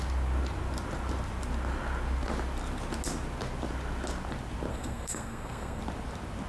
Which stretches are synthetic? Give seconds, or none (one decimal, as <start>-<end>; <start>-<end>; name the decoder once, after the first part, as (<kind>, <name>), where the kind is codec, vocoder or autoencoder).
4.7-5.8 (codec, SNAC)